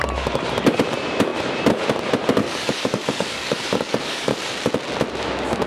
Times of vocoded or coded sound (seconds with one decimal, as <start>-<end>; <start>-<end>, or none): 2.4-4.4

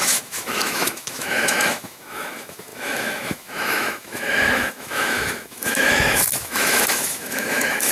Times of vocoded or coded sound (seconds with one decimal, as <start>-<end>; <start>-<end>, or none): 0.0-7.9